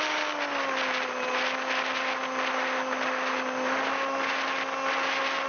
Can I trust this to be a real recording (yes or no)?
yes